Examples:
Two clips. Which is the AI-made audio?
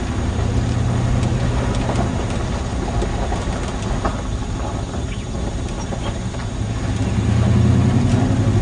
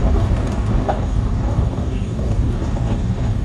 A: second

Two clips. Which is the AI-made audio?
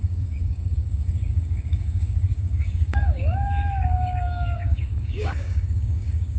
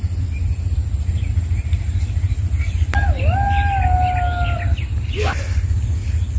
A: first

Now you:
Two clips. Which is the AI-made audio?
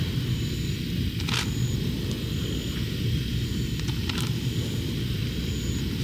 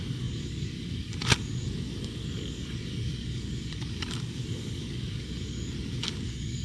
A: second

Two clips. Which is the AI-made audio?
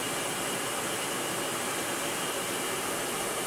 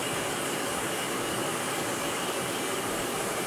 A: second